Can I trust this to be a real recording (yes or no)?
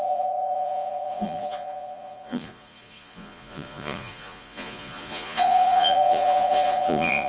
no